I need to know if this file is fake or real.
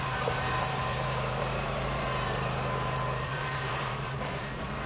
fake